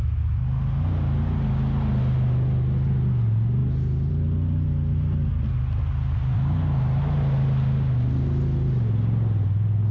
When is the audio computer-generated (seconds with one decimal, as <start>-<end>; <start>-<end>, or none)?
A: none

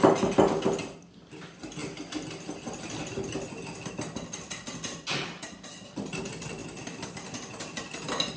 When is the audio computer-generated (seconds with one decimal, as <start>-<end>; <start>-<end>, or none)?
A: none

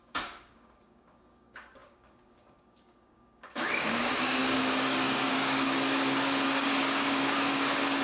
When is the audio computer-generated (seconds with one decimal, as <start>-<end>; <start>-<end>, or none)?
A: 0.0-8.0

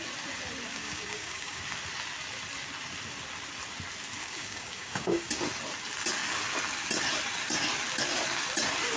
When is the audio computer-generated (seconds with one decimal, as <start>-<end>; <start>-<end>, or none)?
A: 0.7-1.6; 4.2-5.4

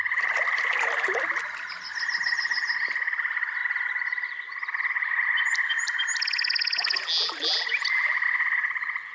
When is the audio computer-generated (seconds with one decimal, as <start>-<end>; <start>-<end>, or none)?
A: none

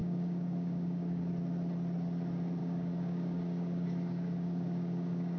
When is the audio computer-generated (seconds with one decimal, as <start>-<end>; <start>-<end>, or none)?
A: 0.0-1.3; 2.6-5.4

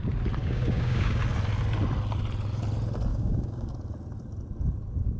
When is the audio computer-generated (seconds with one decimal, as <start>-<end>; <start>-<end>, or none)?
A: 0.4-1.2; 3.1-3.7